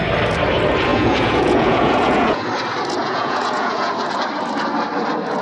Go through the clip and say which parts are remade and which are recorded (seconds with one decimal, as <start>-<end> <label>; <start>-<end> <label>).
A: 0.0-0.9 recorded; 0.9-2.4 remade; 2.4-3.0 recorded; 3.0-3.9 remade; 3.9-5.4 recorded